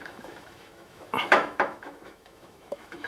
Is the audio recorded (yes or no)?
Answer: no